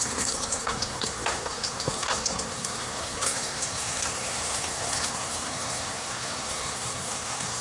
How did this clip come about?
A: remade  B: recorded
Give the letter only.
A